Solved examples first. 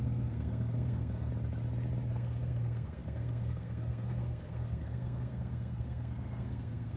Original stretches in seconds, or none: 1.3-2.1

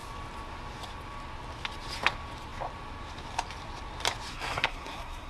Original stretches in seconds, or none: 0.0-4.3

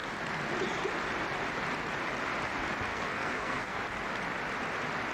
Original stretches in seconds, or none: 0.0-2.9; 3.8-5.1

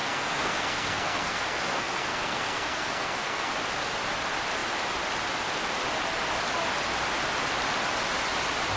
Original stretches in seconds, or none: 3.5-8.8

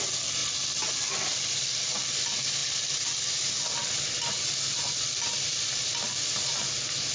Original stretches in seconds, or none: 0.0-7.1

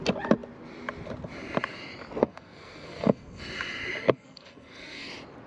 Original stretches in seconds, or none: 0.0-2.2; 3.4-4.0; 5.1-5.5

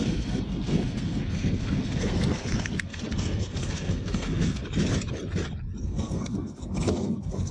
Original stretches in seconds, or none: 4.6-5.8

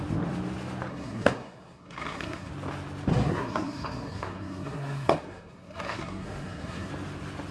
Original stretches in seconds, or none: 0.0-0.9; 2.5-3.1; 6.9-7.5